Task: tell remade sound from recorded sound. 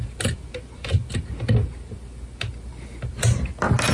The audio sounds recorded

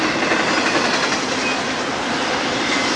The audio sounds recorded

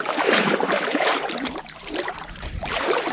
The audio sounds remade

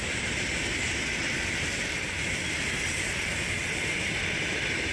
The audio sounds recorded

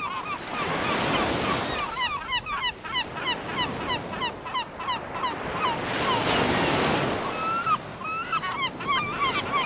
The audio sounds recorded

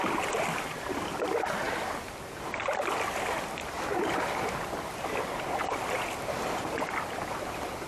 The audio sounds recorded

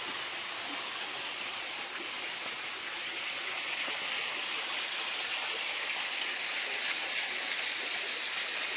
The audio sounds recorded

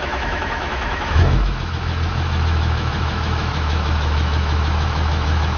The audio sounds remade